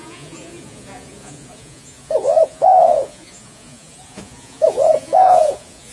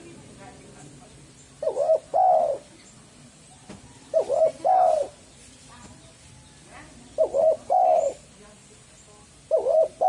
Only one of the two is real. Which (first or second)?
second